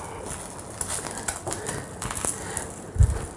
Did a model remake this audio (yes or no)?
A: no